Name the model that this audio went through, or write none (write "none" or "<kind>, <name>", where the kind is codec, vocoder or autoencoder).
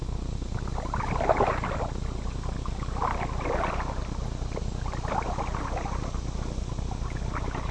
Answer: none